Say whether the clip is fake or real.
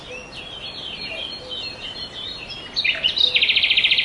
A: real